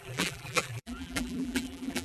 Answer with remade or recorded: remade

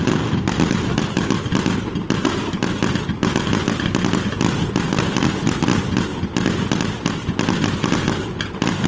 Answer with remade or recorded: recorded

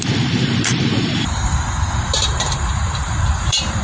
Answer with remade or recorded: remade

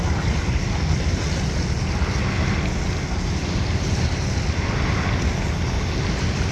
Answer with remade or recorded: recorded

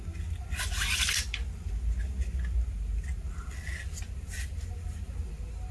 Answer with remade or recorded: recorded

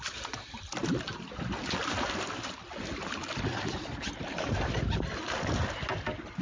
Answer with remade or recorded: recorded